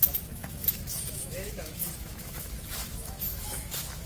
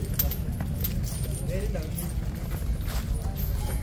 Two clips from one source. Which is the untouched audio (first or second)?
second